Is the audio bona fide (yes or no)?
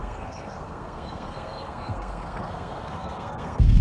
no